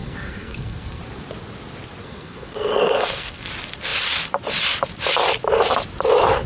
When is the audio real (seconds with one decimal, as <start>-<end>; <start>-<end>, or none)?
1.0-2.0; 3.5-6.5